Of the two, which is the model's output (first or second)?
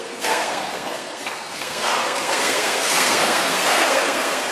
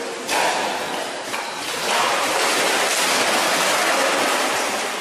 first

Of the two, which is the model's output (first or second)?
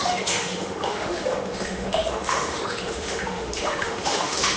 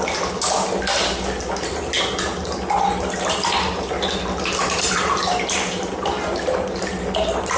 first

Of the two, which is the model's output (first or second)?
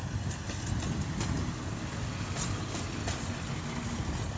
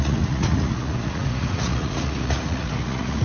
second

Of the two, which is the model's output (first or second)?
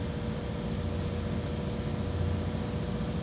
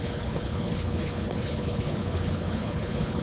second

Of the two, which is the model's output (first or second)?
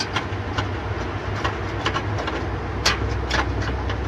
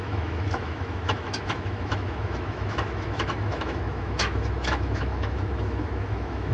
second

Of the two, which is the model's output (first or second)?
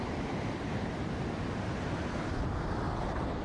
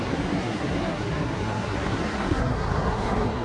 second